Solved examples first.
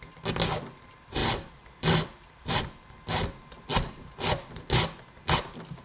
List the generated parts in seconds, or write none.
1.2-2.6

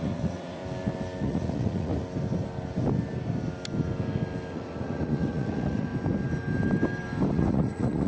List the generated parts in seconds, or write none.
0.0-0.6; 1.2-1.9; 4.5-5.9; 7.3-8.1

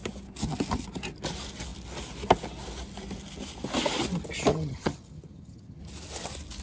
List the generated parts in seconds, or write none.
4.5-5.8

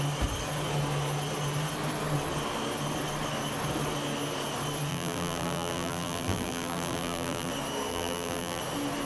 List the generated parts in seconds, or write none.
4.9-7.5; 7.9-8.6

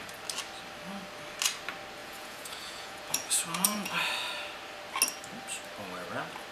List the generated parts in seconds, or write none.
2.0-3.9